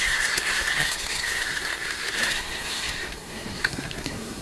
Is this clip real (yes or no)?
no